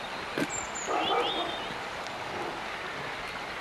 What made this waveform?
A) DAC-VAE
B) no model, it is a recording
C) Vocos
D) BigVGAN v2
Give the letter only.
B